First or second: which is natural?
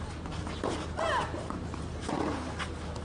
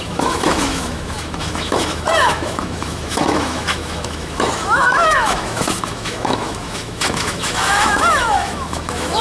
first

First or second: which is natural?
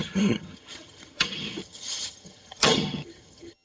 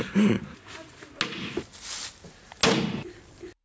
second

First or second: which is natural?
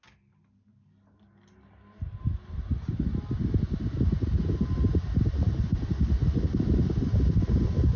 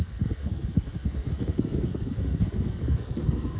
first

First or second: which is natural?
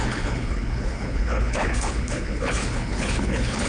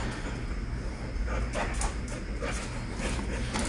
second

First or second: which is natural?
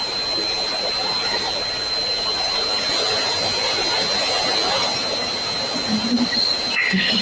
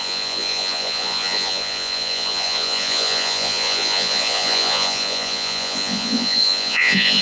first